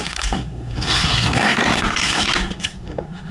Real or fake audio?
fake